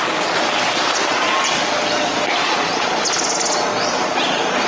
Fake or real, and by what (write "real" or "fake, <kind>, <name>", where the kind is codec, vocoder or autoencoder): real